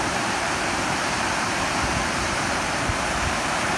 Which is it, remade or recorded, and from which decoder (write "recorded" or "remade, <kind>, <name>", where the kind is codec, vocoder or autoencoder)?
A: remade, vocoder, BigVGAN v2